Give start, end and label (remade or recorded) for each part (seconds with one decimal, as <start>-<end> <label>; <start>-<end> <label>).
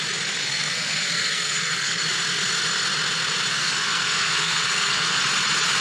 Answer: 0.0-0.4 recorded; 0.4-2.0 remade; 2.0-3.5 recorded; 3.5-5.2 remade; 5.2-5.8 recorded